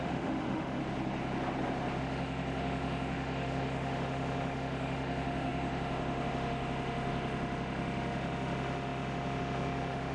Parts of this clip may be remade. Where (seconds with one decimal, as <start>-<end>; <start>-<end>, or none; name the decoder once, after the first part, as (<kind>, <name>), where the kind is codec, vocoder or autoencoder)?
0.0-0.8 (autoencoder, DAC-VAE); 2.0-10.1